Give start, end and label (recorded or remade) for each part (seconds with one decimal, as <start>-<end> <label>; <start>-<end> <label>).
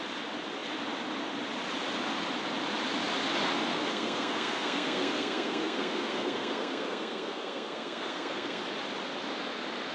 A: 0.0-3.7 recorded; 3.7-8.6 remade; 8.6-9.9 recorded